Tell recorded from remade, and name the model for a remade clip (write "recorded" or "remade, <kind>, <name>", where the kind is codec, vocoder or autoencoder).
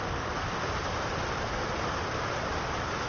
recorded